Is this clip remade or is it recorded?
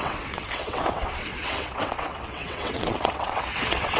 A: remade